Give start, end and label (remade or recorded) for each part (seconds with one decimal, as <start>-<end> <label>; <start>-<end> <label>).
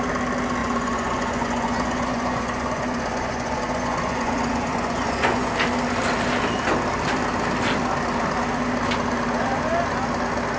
0.0-0.6 recorded; 0.6-5.5 remade; 5.5-10.6 recorded